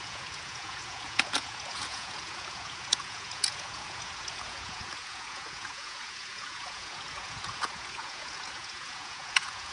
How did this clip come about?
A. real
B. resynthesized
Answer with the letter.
B